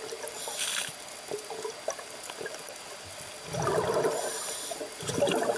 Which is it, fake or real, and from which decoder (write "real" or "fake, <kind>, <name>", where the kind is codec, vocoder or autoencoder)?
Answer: real